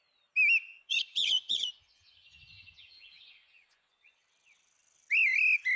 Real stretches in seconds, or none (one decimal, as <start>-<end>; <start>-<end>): 0.0-0.7; 4.2-5.8